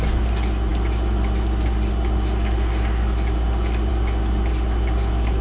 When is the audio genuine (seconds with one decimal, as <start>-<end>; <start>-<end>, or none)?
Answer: 0.0-5.4

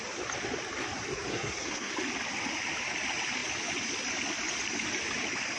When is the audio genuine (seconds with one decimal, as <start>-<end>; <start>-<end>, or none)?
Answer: 0.0-1.3; 1.9-5.6

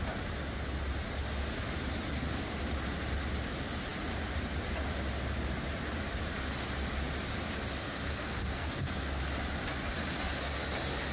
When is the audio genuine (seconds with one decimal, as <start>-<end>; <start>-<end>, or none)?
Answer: 0.0-7.8; 9.2-11.1

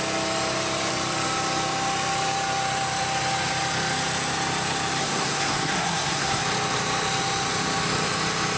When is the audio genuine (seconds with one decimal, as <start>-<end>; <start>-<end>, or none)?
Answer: 0.0-5.0; 6.4-8.6

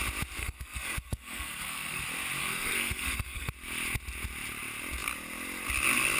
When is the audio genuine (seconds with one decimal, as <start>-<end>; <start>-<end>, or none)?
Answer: 0.0-0.4; 2.0-2.4; 3.5-6.2